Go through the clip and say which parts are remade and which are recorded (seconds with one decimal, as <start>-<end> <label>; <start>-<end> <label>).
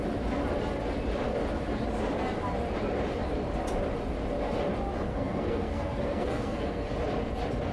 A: 0.0-5.1 recorded; 5.1-6.9 remade; 6.9-7.7 recorded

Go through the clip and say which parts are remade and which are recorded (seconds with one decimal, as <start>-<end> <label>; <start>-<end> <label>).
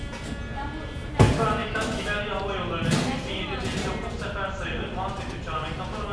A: 0.0-1.6 recorded; 1.6-2.2 remade; 2.2-6.1 recorded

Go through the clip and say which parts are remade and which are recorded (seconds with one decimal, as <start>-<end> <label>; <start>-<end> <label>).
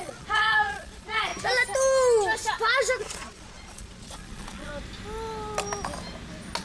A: 0.0-1.3 remade; 1.3-3.0 recorded; 3.0-4.7 remade; 4.7-6.6 recorded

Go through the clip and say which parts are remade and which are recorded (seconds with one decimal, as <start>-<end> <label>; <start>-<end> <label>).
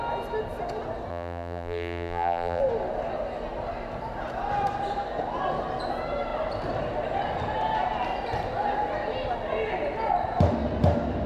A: 0.0-1.1 recorded; 1.1-2.6 remade; 2.6-11.3 recorded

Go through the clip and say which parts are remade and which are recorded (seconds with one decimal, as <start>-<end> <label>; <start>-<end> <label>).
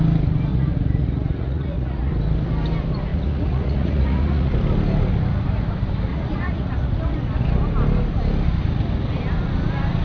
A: 0.0-0.5 recorded; 0.5-2.1 remade; 2.1-3.1 recorded; 3.1-4.5 remade; 4.5-6.1 recorded; 6.1-6.9 remade; 6.9-10.0 recorded